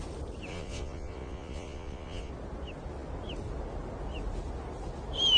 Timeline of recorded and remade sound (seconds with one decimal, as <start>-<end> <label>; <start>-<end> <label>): 0.0-0.5 recorded; 0.5-2.3 remade; 2.3-5.4 recorded